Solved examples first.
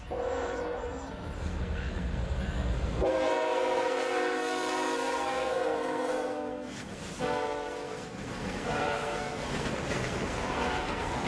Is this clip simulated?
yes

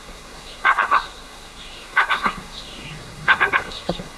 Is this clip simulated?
yes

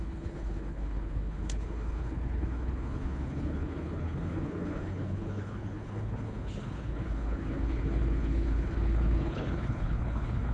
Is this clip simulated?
yes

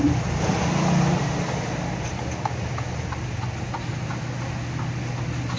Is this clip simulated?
no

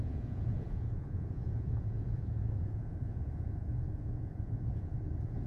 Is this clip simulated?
yes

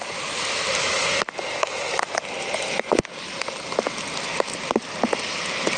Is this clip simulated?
no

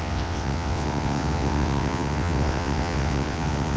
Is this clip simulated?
yes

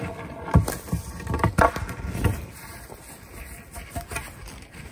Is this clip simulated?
no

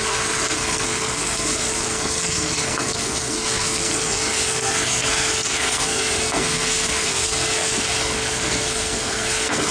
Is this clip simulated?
yes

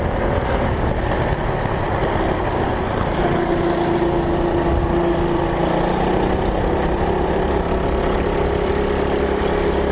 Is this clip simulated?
no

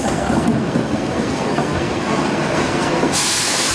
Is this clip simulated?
yes